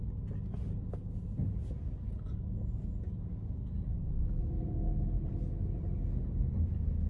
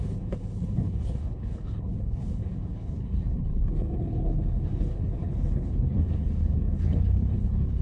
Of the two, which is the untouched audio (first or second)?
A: first